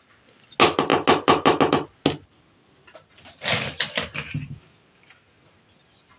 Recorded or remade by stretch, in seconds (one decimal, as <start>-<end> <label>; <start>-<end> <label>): 0.0-6.2 recorded